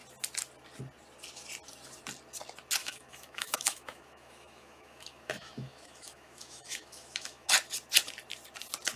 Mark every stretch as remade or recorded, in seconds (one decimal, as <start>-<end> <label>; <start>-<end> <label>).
0.0-2.8 recorded; 2.8-7.5 remade; 7.5-9.0 recorded